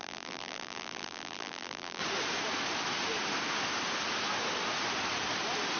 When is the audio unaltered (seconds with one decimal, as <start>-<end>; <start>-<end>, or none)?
2.0-5.8